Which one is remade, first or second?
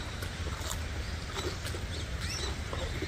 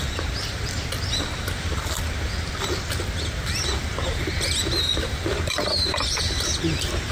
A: second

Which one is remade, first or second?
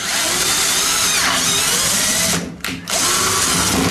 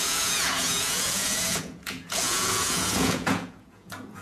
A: second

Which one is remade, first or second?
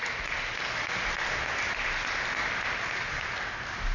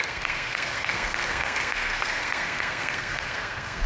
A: second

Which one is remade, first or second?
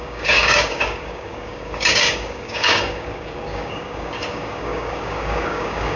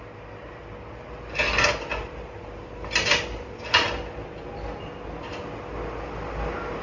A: first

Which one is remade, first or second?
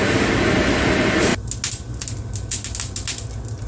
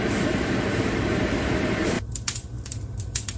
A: second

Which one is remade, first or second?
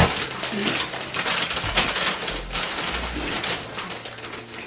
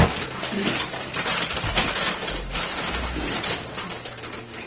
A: second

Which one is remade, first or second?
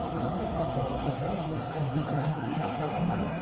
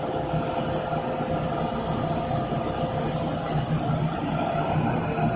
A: first